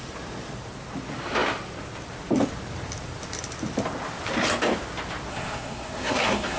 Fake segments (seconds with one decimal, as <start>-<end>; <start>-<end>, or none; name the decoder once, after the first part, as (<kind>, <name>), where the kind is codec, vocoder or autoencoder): 5.3-6.6 (codec, SNAC)